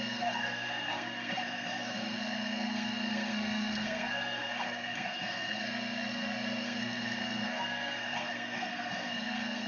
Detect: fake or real fake